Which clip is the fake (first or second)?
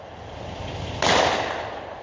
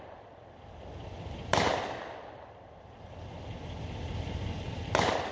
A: second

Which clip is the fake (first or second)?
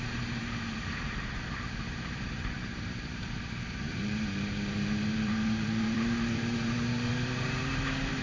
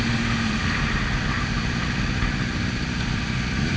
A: first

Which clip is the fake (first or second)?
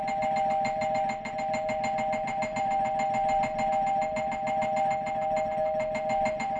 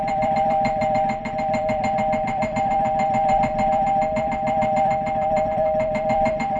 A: second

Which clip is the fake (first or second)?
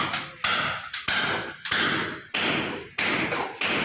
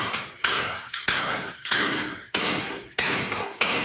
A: second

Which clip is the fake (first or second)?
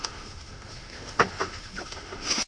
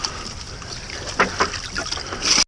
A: first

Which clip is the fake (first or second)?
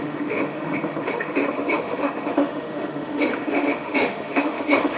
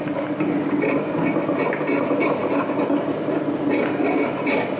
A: first